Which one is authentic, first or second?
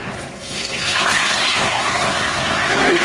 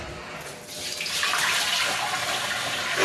second